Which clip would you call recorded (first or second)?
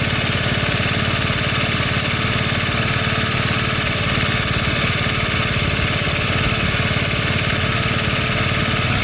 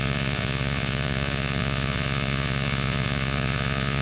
first